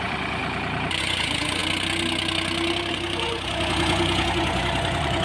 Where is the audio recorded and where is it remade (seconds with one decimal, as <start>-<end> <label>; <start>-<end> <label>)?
0.0-0.4 remade; 0.4-1.0 recorded; 1.0-1.6 remade; 1.6-2.9 recorded; 2.9-5.2 remade